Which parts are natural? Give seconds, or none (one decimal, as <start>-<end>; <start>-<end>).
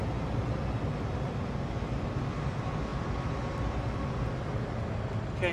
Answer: 0.0-5.5